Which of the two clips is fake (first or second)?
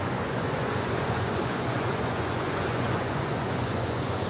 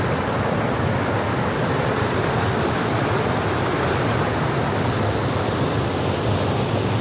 first